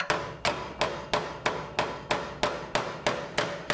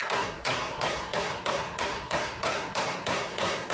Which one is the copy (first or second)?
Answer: second